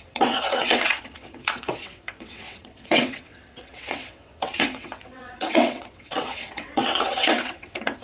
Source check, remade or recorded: remade